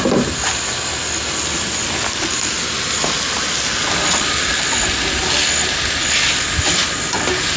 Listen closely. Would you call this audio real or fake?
real